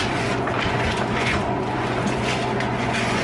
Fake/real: fake